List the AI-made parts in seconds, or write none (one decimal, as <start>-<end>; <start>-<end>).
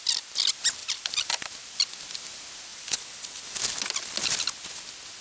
0.8-1.4; 2.7-3.6